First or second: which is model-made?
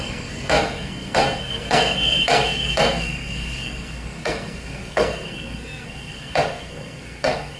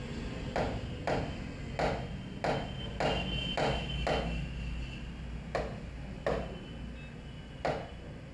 first